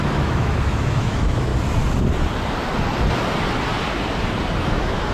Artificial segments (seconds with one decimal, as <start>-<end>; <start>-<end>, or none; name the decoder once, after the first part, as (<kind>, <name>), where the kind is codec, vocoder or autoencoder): 0.0-1.5 (autoencoder, DAC-VAE); 4.6-5.1